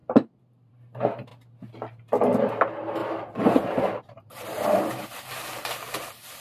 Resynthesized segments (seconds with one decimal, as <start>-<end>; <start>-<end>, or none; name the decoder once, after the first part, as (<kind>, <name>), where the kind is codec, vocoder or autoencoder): 0.0-0.7 (vocoder, BigVGAN v2); 3.0-4.8